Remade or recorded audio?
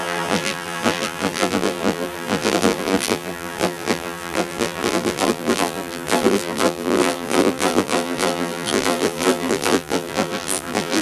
remade